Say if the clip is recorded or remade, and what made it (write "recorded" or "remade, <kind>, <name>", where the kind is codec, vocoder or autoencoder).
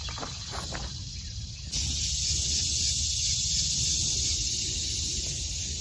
recorded